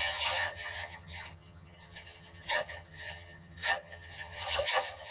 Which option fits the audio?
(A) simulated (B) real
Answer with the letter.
A